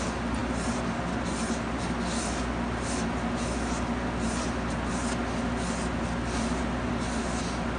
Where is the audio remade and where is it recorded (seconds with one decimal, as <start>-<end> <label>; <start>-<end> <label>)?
0.0-7.8 recorded